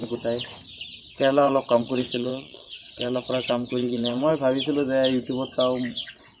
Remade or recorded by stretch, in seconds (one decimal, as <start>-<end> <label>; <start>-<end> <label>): 0.0-1.0 recorded; 1.0-4.3 remade; 4.3-5.9 recorded; 5.9-6.4 remade